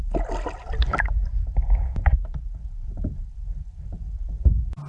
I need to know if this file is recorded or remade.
recorded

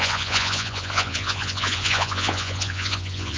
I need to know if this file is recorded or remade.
remade